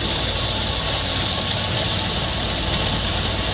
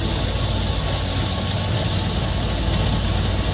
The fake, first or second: first